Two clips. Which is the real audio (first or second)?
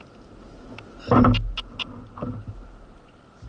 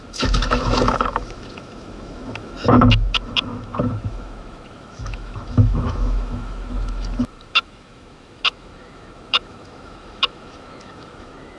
first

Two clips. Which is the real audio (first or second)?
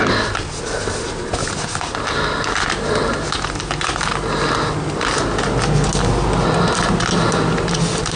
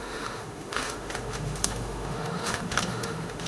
first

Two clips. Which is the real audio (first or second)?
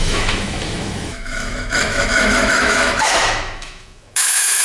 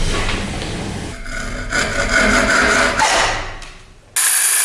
second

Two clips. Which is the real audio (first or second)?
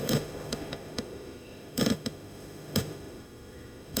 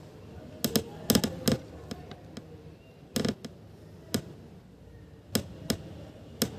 second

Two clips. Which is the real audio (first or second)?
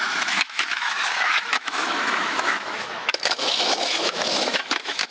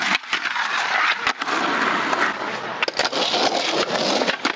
second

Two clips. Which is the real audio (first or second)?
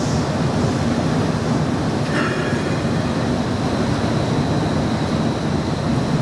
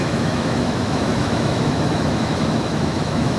first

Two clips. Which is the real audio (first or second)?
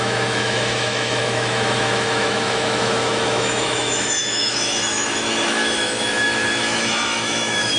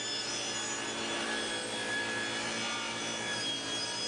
second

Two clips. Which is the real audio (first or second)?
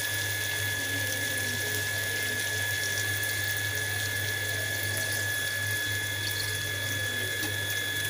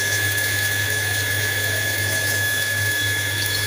first